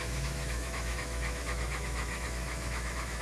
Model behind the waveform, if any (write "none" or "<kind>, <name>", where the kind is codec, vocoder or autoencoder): autoencoder, DAC-VAE